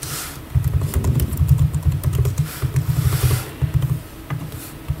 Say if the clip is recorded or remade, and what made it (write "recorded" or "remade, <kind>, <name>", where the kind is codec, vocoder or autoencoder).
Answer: recorded